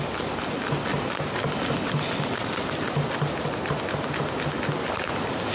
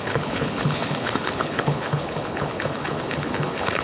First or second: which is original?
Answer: first